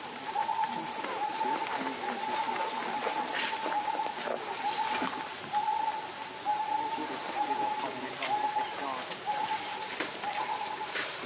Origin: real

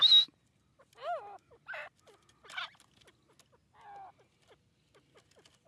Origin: real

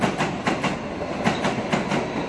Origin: real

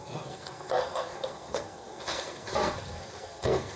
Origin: fake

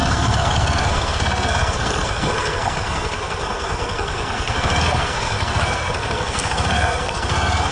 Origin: fake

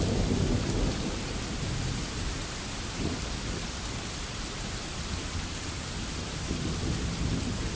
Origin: real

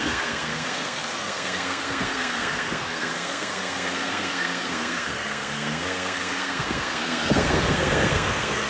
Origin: fake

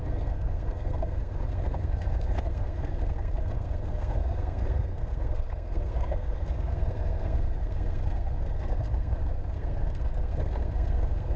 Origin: fake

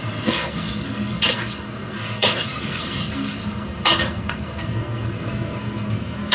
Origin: fake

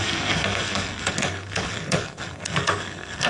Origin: fake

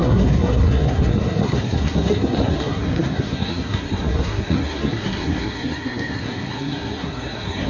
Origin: fake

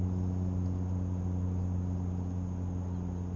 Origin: real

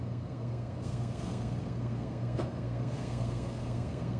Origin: fake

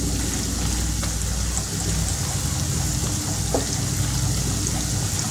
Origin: real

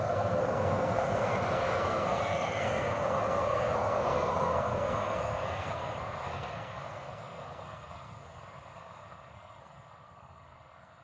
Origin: fake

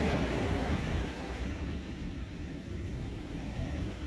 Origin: fake